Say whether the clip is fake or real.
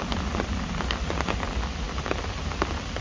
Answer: real